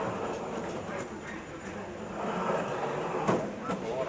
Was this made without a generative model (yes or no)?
yes